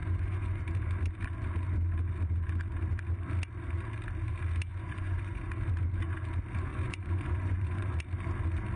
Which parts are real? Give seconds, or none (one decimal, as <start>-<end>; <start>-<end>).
0.6-4.7; 5.5-6.7; 8.0-8.8